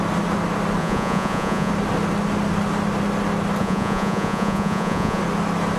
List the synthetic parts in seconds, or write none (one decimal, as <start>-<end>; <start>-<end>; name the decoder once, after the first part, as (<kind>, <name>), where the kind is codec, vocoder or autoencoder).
0.8-1.7 (vocoder, Vocos); 3.6-5.2